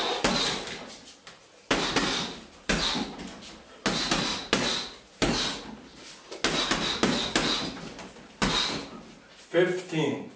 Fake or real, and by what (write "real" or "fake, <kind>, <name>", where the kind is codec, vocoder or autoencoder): real